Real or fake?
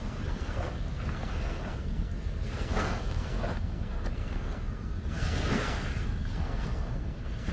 fake